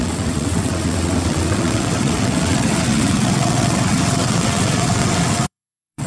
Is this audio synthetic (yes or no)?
yes